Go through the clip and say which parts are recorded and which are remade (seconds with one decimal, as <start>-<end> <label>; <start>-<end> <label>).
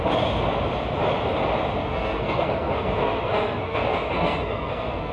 0.0-1.8 recorded; 1.8-5.1 remade